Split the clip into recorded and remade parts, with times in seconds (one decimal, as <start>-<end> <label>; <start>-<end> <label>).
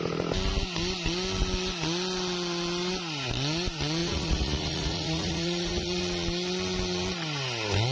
0.0-4.0 recorded; 4.0-6.0 remade; 6.0-7.9 recorded